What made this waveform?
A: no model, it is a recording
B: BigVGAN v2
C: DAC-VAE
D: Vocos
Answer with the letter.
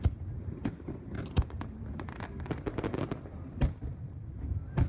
B